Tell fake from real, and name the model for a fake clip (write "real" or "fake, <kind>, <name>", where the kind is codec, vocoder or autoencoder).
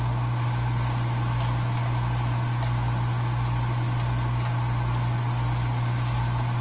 real